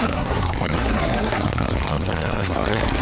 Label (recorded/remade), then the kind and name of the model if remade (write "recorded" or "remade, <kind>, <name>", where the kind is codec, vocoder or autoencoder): remade, codec, SNAC